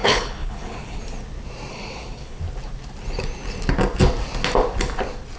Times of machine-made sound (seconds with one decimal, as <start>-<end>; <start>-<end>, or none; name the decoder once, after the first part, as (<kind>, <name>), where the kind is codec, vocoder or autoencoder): 0.0-1.0 (codec, HILCodec); 1.7-2.4